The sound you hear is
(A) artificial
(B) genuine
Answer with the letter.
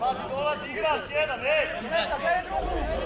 B